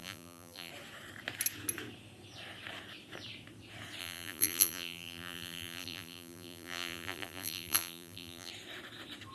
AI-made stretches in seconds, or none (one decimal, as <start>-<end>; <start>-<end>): 0.0-0.7; 4.0-8.5